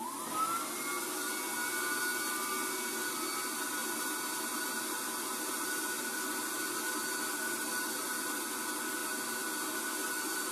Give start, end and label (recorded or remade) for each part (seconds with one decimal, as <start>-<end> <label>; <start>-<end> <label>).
0.0-10.5 recorded